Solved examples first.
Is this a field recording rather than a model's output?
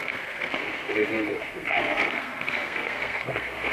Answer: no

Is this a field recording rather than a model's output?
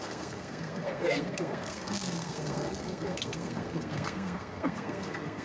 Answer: no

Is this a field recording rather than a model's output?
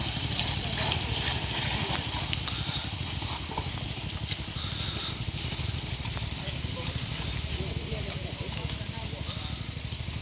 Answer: yes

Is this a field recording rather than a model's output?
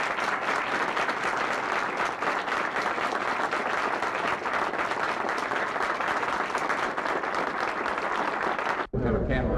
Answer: yes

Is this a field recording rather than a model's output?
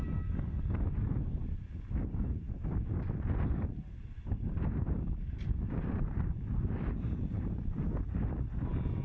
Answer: yes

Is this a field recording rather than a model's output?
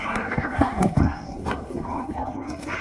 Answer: no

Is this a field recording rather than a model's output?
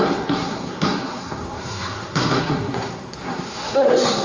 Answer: no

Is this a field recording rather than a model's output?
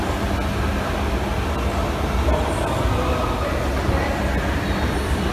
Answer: yes